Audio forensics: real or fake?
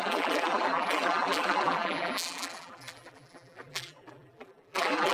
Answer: fake